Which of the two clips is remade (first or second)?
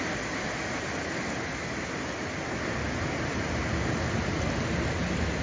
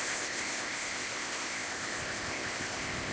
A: second